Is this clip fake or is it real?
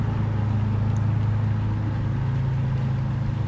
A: real